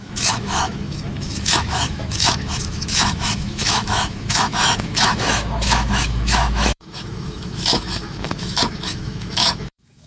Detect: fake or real fake